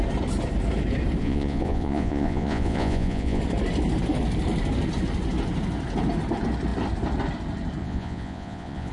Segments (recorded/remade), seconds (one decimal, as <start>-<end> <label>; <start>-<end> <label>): 0.0-1.2 recorded; 1.2-3.4 remade; 3.4-7.8 recorded; 7.8-8.9 remade